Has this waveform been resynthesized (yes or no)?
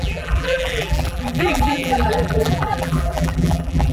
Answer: yes